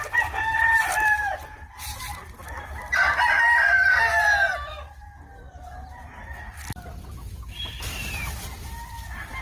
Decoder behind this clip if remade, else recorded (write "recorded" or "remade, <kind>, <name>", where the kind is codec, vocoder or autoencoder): remade, vocoder, BigVGAN v2